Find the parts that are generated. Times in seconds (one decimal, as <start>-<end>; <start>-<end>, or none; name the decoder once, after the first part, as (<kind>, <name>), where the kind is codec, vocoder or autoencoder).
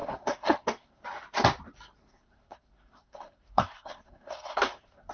0.0-1.0 (codec, SNAC); 2.0-5.1